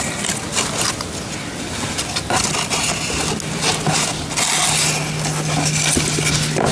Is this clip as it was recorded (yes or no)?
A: yes